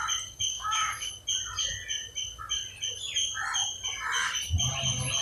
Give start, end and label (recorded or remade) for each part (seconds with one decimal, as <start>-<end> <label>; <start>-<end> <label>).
0.0-0.5 recorded; 0.5-1.1 remade; 1.1-5.2 recorded

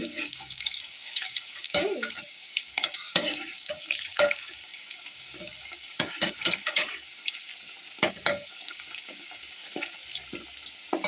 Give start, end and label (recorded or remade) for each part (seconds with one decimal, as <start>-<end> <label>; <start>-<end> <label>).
0.0-7.5 remade; 7.5-8.1 recorded; 8.1-10.0 remade; 10.0-11.1 recorded

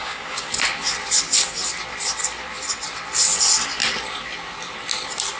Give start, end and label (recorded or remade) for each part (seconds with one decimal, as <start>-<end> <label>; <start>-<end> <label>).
0.0-0.5 remade; 0.5-5.4 recorded

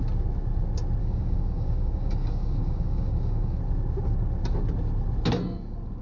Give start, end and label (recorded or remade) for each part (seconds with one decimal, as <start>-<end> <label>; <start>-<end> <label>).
0.0-1.0 recorded; 1.0-3.6 remade; 3.6-6.0 recorded

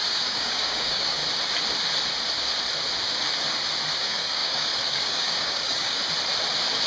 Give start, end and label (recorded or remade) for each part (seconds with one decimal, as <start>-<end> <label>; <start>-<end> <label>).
0.0-1.2 remade; 1.2-4.0 recorded; 4.0-6.0 remade; 6.0-6.9 recorded

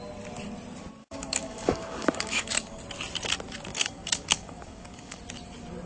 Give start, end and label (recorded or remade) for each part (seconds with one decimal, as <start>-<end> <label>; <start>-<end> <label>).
0.0-1.0 recorded; 1.0-2.8 remade; 2.8-3.7 recorded; 3.7-5.2 remade; 5.2-5.9 recorded

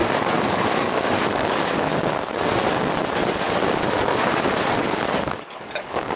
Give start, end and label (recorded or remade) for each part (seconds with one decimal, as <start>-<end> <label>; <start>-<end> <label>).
0.0-1.9 remade; 1.9-3.7 recorded; 3.7-4.3 remade; 4.3-4.8 recorded; 4.8-6.2 remade

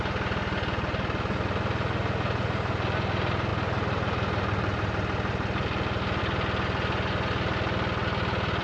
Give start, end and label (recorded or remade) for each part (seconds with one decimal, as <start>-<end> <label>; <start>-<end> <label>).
0.0-8.6 recorded